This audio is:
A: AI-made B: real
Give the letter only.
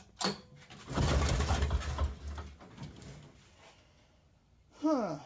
B